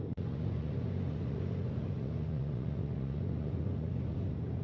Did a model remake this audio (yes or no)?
yes